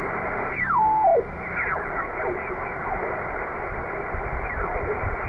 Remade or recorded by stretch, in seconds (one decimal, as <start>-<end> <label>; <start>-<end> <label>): 0.0-5.3 recorded